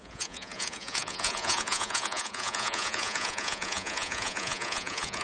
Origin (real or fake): fake